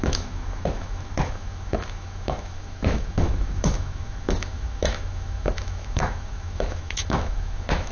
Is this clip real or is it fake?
fake